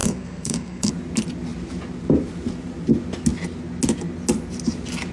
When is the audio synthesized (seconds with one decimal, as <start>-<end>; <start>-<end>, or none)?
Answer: 0.0-0.9